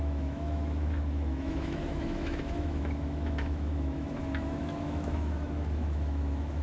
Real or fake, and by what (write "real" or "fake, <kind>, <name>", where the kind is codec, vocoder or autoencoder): fake, autoencoder, DAC-VAE